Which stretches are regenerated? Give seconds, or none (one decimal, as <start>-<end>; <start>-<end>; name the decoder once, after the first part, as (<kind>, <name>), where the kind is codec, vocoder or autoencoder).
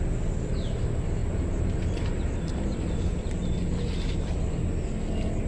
1.2-4.5 (vocoder, BigVGAN v2)